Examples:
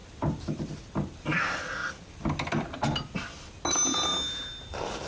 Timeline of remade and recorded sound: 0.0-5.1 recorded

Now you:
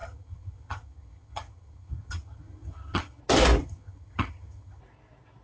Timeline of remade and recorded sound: 0.0-3.2 remade; 3.2-3.6 recorded; 3.6-4.8 remade; 4.8-5.4 recorded

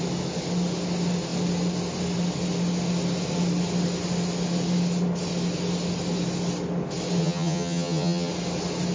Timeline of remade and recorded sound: 0.0-7.2 recorded; 7.2-8.3 remade; 8.3-8.9 recorded

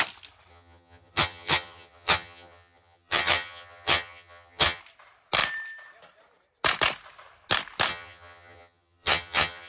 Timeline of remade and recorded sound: 0.0-0.5 recorded; 0.5-4.8 remade; 4.8-7.9 recorded; 7.9-9.7 remade

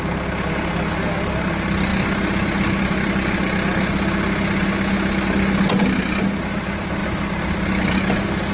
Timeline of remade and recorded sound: 0.0-8.5 recorded

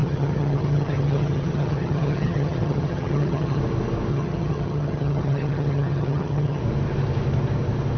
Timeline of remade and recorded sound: 0.0-3.6 remade; 3.6-4.1 recorded; 4.1-6.6 remade; 6.6-8.0 recorded